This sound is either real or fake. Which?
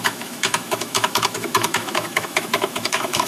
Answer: fake